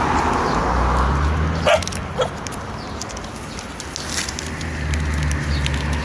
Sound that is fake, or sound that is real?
real